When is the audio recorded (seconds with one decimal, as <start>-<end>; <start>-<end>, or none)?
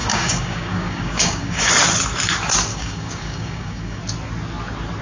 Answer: 1.7-2.7; 4.0-5.0